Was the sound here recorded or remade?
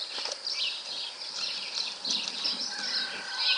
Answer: recorded